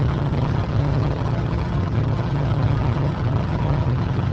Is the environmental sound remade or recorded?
remade